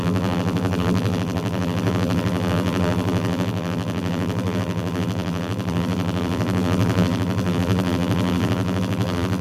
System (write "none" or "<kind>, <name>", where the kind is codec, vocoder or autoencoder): vocoder, BigVGAN v2